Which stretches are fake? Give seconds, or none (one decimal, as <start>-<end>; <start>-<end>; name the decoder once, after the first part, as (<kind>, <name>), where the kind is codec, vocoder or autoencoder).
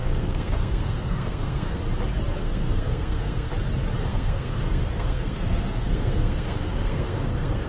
0.0-1.8 (codec, SNAC); 2.4-3.5; 4.0-7.7